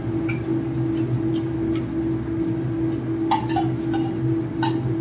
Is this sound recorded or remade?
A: recorded